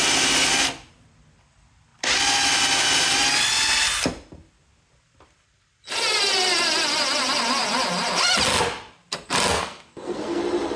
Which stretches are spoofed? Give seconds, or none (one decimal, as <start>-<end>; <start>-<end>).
9.5-10.4

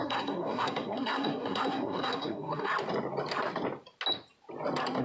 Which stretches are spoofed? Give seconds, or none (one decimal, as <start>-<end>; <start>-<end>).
0.0-2.7

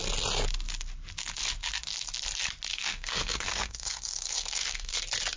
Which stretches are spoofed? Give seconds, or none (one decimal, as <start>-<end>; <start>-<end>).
2.7-5.0

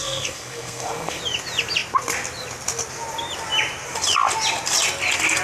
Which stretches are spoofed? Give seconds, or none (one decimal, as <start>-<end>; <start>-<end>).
0.0-1.2

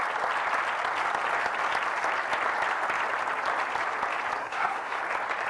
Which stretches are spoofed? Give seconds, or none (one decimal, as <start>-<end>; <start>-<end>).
4.4-5.0